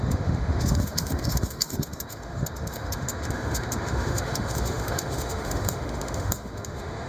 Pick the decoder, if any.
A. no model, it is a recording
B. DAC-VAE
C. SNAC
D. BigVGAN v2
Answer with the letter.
B